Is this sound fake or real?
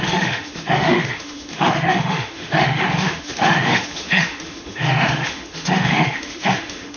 fake